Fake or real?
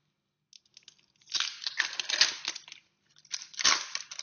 real